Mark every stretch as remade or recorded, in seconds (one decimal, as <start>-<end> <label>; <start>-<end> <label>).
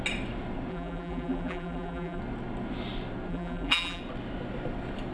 0.0-0.7 recorded; 0.7-2.2 remade; 2.2-3.3 recorded; 3.3-4.0 remade; 4.0-5.1 recorded